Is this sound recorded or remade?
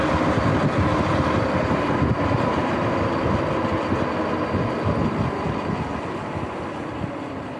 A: recorded